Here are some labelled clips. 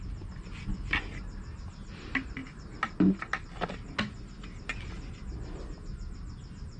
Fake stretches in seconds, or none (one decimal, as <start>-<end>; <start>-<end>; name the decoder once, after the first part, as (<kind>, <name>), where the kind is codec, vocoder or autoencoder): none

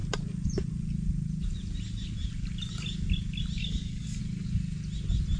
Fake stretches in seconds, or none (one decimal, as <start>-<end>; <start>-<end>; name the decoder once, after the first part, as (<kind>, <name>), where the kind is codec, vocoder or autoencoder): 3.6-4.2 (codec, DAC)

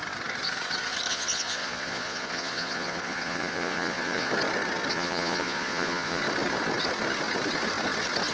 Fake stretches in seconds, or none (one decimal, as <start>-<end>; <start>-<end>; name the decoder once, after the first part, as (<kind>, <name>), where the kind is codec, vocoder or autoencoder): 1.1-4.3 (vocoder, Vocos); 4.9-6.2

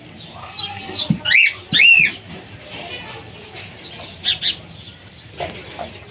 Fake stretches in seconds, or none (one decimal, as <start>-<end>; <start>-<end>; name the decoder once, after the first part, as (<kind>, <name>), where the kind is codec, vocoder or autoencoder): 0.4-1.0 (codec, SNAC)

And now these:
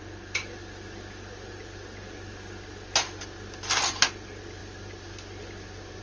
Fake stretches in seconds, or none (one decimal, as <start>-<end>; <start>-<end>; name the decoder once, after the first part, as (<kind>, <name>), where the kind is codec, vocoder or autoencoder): none

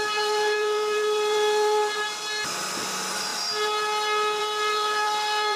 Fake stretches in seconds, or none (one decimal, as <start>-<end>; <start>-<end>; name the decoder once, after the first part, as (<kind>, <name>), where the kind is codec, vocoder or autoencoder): 0.0-3.3 (vocoder, BigVGAN v2); 4.4-5.6

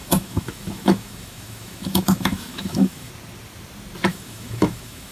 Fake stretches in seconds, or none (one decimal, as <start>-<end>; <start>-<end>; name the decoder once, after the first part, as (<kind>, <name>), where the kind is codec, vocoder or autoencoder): 0.0-3.1 (autoencoder, DAC-VAE); 4.1-5.1